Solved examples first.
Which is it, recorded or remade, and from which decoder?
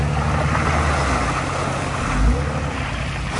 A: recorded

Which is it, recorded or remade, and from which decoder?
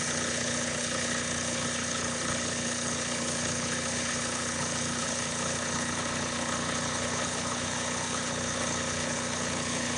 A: remade, codec, HILCodec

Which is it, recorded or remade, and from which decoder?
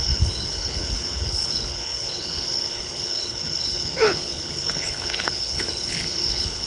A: remade, codec, HILCodec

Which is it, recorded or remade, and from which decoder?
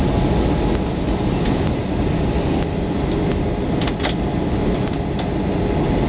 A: recorded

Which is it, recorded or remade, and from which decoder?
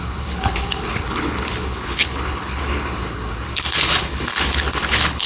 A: remade, codec, HILCodec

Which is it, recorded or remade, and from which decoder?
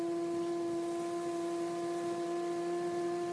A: recorded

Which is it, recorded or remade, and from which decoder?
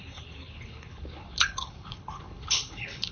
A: remade, codec, HILCodec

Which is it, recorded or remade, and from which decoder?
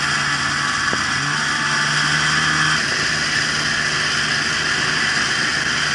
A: recorded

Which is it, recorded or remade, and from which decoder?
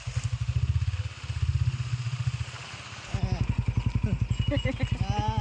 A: recorded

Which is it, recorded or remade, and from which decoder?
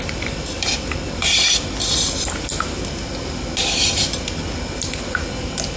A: recorded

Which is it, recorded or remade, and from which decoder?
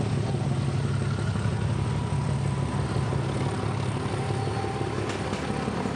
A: recorded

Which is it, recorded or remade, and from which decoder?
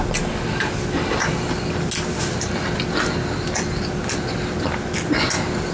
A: recorded